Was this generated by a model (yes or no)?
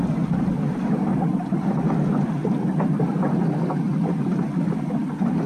no